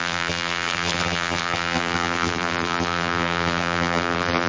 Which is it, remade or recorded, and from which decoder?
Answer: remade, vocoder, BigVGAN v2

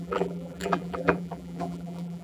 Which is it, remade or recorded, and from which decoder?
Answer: remade, vocoder, BigVGAN v2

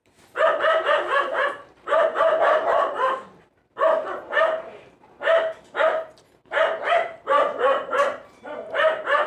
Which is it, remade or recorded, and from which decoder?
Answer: remade, vocoder, BigVGAN v2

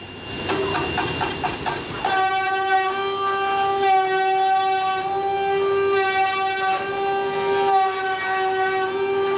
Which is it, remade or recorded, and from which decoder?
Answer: recorded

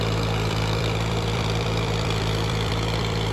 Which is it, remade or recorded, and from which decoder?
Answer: remade, vocoder, BigVGAN v2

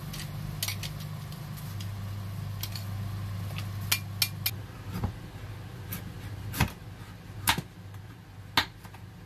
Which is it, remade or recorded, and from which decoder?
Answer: recorded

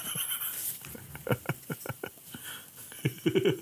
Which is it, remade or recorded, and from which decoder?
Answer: recorded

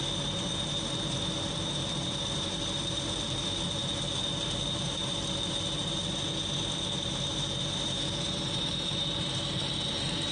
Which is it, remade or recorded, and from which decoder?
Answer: remade, vocoder, BigVGAN v2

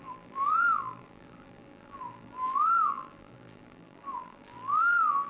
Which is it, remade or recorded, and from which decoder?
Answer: remade, vocoder, BigVGAN v2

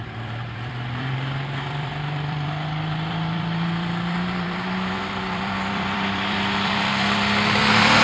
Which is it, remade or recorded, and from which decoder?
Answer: remade, vocoder, BigVGAN v2